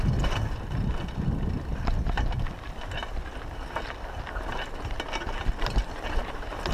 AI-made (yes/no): no